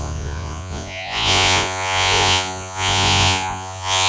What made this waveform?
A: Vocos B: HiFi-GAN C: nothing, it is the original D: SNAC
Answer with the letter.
A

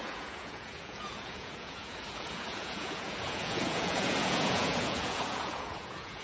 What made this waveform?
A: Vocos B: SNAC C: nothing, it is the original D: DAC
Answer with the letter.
A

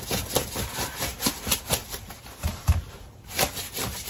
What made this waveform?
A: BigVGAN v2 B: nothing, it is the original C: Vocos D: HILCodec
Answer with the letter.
B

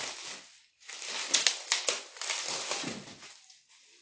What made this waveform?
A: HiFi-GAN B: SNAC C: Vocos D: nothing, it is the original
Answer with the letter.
D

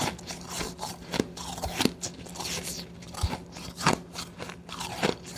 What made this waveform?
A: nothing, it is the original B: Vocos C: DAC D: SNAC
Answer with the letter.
A